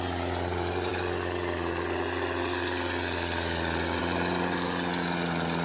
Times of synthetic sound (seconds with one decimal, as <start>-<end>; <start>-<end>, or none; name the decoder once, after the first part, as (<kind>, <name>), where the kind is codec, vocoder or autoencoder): none